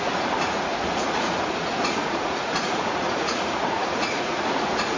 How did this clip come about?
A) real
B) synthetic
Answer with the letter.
B